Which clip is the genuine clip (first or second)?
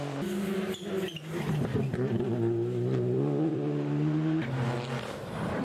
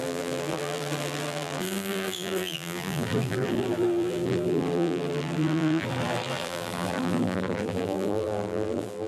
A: first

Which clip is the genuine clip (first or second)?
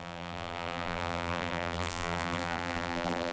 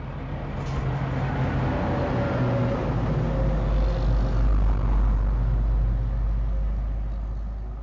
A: second